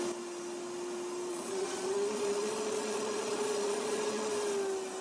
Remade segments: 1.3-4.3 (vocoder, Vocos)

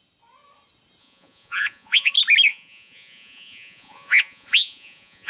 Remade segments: 1.0-2.1 (vocoder, Vocos); 2.5-5.3

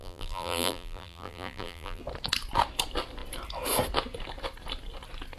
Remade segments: 0.0-2.0 (vocoder, BigVGAN v2)